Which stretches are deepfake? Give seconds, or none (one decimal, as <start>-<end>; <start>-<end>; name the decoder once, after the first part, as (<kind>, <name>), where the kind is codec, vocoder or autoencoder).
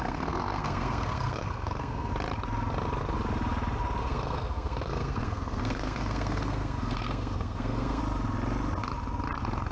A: 0.0-2.1 (codec, SNAC); 4.0-8.0